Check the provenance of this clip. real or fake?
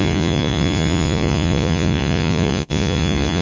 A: fake